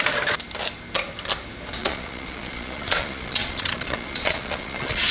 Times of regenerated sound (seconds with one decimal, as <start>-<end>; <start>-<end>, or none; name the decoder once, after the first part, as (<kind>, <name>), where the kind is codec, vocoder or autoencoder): 1.8-5.1 (vocoder, Vocos)